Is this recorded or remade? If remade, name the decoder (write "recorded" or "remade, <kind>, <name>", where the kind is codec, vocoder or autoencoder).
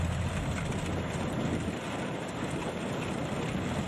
recorded